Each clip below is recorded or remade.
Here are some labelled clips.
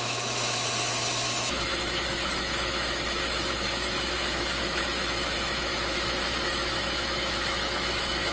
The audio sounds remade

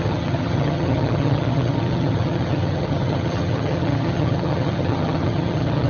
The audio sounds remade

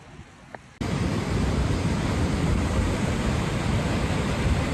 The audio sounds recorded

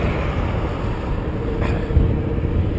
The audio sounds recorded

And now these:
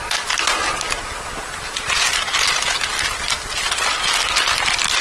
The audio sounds recorded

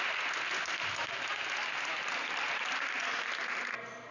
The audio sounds recorded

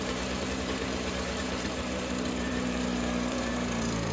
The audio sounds remade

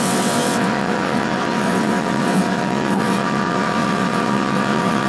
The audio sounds remade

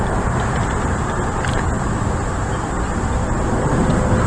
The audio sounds recorded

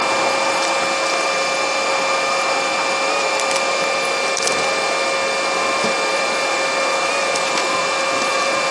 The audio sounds recorded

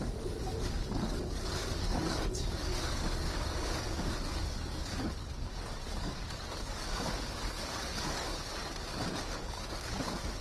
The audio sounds remade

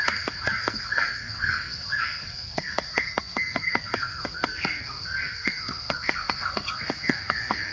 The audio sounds remade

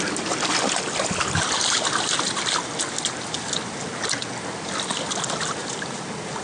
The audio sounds recorded